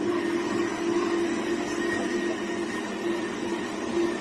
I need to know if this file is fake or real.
real